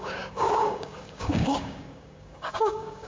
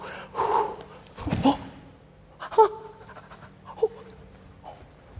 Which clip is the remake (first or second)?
first